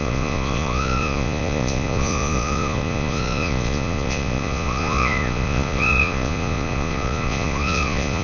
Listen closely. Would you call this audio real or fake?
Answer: fake